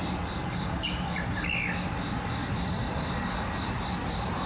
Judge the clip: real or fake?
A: real